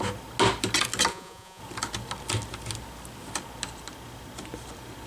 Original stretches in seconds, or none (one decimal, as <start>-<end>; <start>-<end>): 0.0-1.1; 1.6-5.1